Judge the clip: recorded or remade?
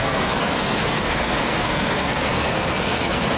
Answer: remade